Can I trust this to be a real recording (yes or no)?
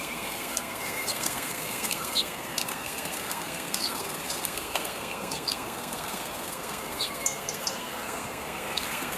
no